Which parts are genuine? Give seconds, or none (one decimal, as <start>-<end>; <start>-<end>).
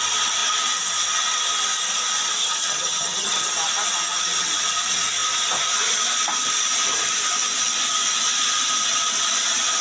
0.0-2.4; 3.5-9.8